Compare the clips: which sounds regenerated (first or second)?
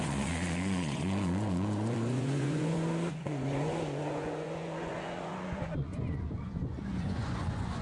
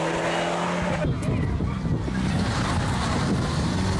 first